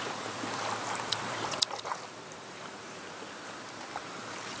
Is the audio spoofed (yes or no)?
yes